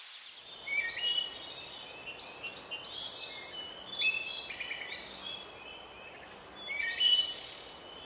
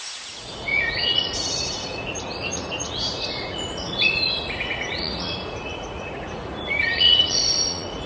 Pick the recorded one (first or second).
first